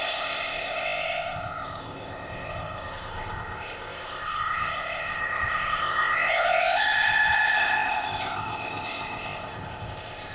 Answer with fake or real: fake